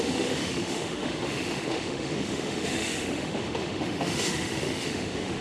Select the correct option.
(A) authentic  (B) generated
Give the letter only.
B